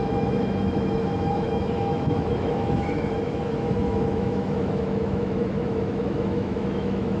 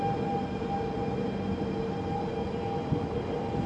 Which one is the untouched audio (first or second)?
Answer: second